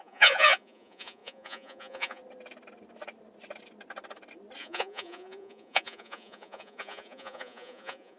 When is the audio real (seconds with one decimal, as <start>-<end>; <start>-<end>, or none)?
2.2-4.6

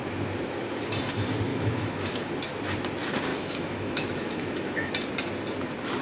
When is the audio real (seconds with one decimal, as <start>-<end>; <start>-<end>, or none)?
0.0-1.5; 2.3-3.3; 4.9-6.0

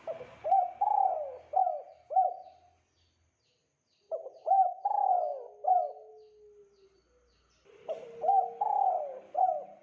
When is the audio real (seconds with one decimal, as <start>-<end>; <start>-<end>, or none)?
0.0-9.8

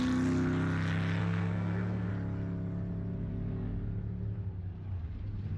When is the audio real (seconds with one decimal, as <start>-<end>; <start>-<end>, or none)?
0.0-1.2; 2.1-5.6

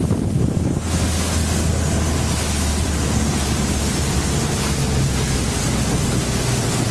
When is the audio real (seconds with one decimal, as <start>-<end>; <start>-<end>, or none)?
0.0-2.7; 5.6-6.9

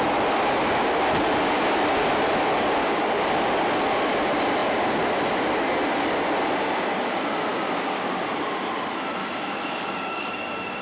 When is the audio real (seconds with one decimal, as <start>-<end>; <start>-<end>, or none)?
0.0-2.8; 3.3-7.5; 8.2-9.2; 10.3-10.8

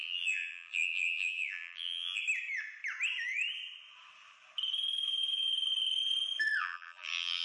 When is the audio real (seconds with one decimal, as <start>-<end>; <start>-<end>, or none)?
2.2-6.6